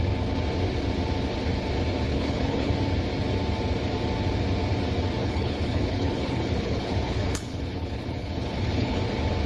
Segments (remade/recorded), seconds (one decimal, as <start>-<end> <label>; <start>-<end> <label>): 0.0-2.1 recorded; 2.1-2.7 remade; 2.7-5.2 recorded; 5.2-9.0 remade; 9.0-9.5 recorded